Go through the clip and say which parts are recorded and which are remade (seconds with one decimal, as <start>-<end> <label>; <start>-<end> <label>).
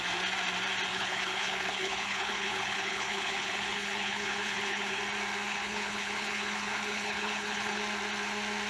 0.0-0.9 recorded; 0.9-5.0 remade; 5.0-5.5 recorded; 5.5-7.8 remade; 7.8-8.7 recorded